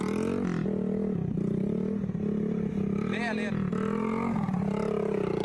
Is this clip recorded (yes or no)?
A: yes